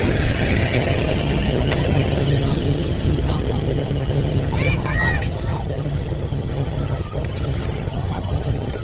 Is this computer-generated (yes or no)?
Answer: yes